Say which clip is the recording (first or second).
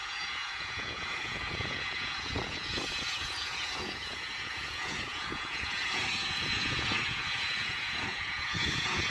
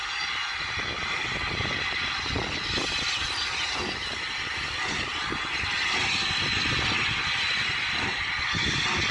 second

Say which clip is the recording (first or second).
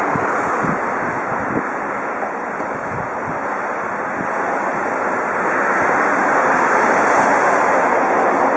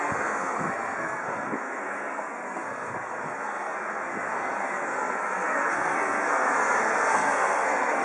first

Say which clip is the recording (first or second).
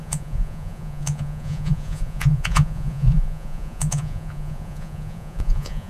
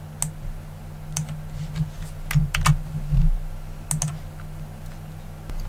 second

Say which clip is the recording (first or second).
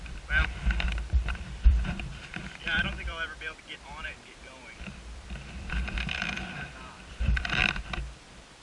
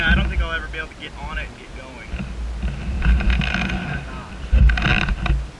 second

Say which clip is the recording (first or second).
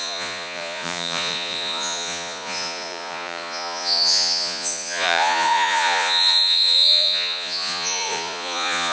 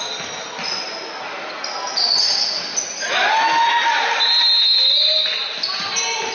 second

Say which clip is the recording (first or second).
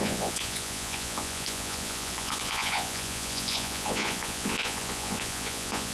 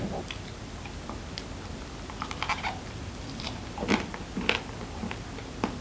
second